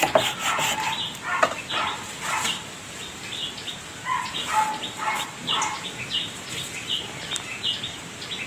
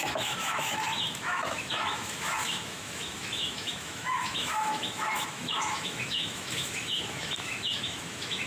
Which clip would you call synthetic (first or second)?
second